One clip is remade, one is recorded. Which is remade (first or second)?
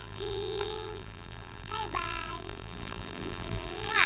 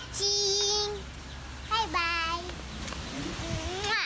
first